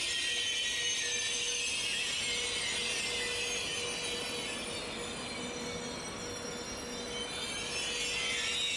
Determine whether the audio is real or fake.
real